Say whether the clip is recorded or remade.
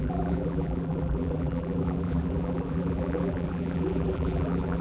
remade